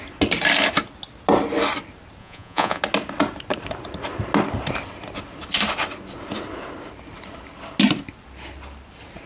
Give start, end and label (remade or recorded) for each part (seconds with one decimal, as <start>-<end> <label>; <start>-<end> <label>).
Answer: 0.0-2.2 recorded; 2.2-2.8 remade; 2.8-9.3 recorded